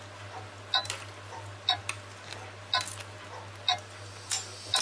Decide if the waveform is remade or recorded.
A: recorded